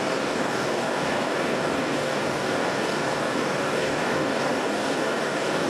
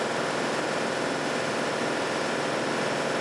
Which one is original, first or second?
second